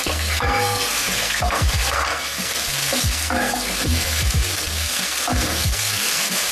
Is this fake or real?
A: fake